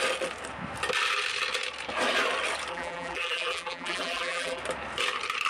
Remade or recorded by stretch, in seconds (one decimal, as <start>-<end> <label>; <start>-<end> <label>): 0.0-2.7 recorded; 2.7-4.6 remade; 4.6-5.5 recorded